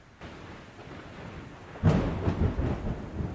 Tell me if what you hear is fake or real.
real